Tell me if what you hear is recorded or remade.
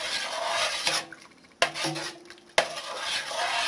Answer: recorded